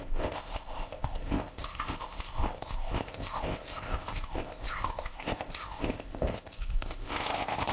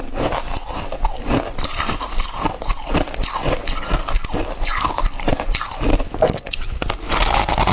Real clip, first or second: second